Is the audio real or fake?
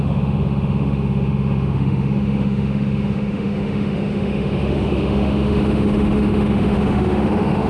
fake